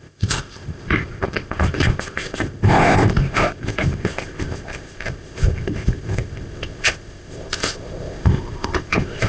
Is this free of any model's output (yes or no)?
no